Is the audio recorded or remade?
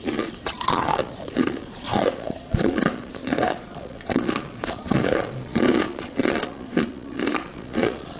remade